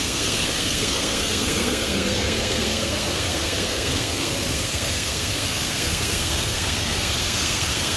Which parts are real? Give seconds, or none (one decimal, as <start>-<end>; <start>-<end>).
none